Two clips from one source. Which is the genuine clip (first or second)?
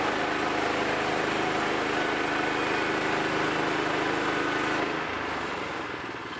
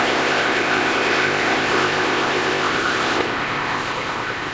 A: first